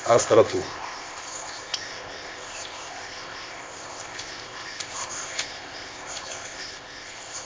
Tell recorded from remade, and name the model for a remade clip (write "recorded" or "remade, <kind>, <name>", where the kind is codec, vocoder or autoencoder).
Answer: remade, codec, ZipCodec